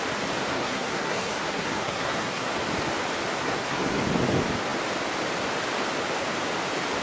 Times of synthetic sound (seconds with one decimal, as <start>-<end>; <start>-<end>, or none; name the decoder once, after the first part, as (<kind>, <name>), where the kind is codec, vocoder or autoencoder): 0.5-2.5 (codec, SNAC); 3.4-4.0